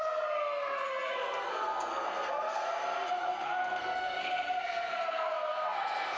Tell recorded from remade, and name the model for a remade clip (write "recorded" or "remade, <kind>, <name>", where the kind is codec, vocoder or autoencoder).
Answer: remade, codec, SNAC